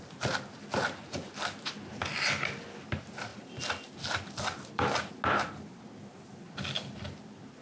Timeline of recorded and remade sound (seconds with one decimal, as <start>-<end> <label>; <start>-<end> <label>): 0.0-7.6 recorded